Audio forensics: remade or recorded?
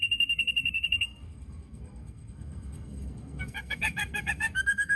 remade